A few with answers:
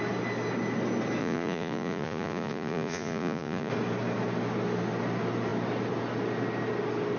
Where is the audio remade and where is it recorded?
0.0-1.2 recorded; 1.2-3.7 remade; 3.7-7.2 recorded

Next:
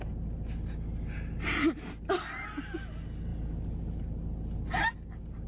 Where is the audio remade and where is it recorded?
0.0-5.5 recorded

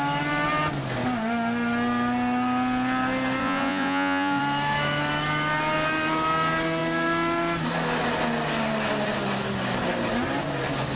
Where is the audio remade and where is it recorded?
0.0-3.4 recorded; 3.4-4.4 remade; 4.4-11.0 recorded

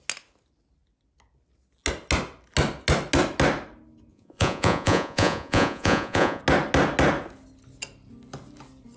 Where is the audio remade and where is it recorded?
0.0-4.1 recorded; 4.1-6.4 remade; 6.4-9.0 recorded

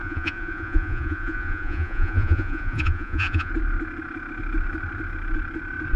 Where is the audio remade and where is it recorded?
0.0-3.5 remade; 3.5-6.0 recorded

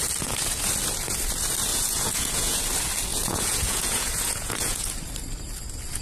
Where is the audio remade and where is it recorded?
0.0-1.7 recorded; 1.7-2.6 remade; 2.6-3.1 recorded; 3.1-4.9 remade; 4.9-6.0 recorded

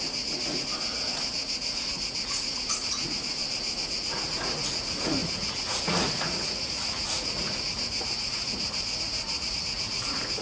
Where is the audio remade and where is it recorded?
0.0-10.4 remade

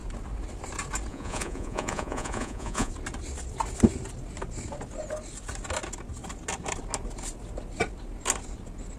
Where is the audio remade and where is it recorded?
0.0-1.1 recorded; 1.1-2.9 remade; 2.9-9.0 recorded